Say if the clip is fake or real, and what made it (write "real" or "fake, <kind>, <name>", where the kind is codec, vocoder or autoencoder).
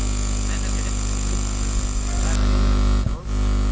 real